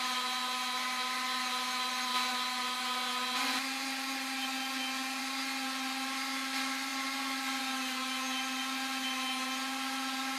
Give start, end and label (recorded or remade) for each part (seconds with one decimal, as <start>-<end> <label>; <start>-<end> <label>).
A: 0.0-10.4 recorded